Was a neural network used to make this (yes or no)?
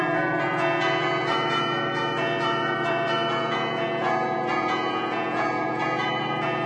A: yes